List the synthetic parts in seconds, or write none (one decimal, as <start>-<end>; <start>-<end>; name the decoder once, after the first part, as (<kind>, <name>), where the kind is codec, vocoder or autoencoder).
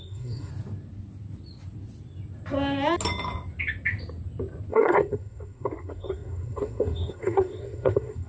0.0-0.5 (codec, SNAC); 4.7-8.3